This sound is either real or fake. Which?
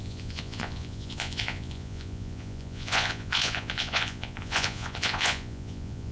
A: fake